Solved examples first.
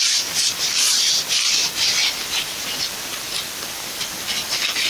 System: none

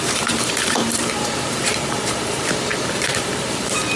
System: vocoder, BigVGAN v2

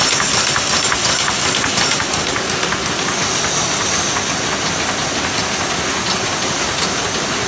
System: none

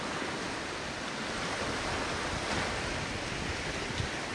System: none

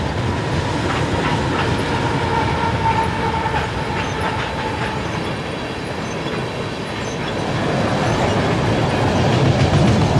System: none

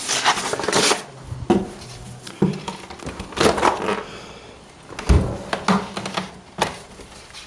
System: none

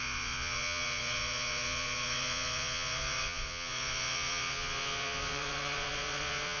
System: vocoder, Vocos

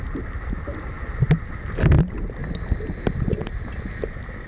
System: none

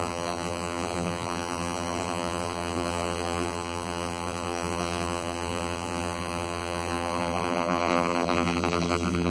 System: vocoder, BigVGAN v2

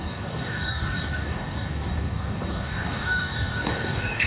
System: codec, DAC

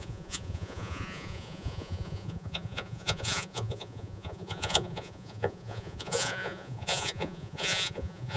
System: vocoder, Vocos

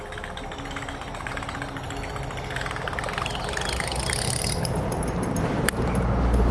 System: none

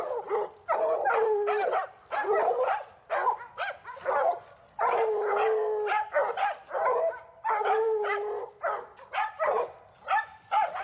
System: none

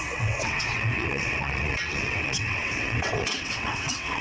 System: vocoder, WaveNeXt